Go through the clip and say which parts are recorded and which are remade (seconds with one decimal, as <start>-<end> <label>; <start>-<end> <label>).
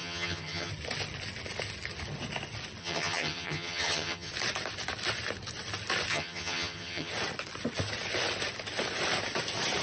0.0-0.7 remade; 0.7-2.8 recorded; 2.8-4.3 remade; 4.3-6.1 recorded; 6.1-7.1 remade; 7.1-9.8 recorded